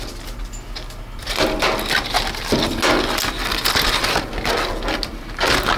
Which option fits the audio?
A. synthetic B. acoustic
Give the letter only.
B